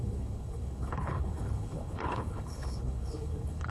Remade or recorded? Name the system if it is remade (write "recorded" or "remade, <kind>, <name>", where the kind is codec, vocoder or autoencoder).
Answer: remade, codec, HILCodec